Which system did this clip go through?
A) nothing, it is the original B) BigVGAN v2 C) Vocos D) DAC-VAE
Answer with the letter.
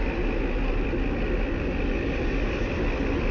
A